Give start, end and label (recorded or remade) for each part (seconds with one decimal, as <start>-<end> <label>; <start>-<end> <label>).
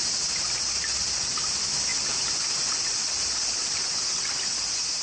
0.0-5.0 recorded